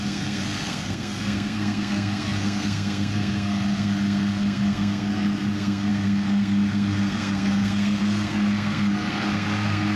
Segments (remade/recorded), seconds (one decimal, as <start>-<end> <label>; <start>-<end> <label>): 0.0-10.0 remade

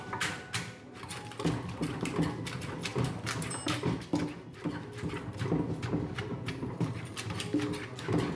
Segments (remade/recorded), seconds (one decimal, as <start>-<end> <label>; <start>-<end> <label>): 0.0-8.4 recorded

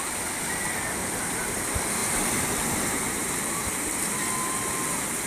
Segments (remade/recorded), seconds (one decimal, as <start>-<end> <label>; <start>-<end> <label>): 0.0-1.0 recorded; 1.0-1.6 remade; 1.6-5.3 recorded

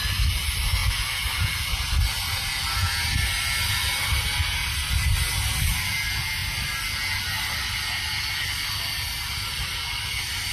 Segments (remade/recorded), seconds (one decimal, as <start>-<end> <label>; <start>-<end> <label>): 0.0-10.5 recorded

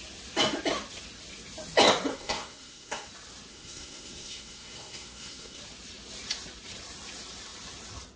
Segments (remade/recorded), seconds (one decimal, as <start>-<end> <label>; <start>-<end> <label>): 0.0-2.1 recorded; 2.1-3.1 remade; 3.1-3.5 recorded; 3.5-5.6 remade; 5.6-8.2 recorded

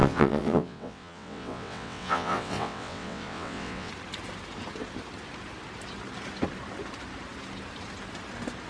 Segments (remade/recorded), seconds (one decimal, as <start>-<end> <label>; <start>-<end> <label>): 0.0-3.9 remade; 3.9-8.7 recorded

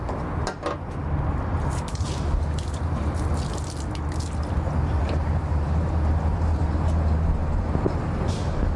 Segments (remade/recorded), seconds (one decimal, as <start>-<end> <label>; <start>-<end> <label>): 0.0-1.5 recorded; 1.5-3.3 remade; 3.3-5.0 recorded; 5.0-6.6 remade; 6.6-7.4 recorded; 7.4-8.0 remade; 8.0-8.8 recorded